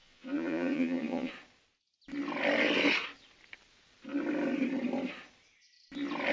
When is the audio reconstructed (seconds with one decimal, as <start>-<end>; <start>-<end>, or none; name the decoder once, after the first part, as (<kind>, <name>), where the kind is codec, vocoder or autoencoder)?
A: 0.0-1.3 (vocoder, Vocos)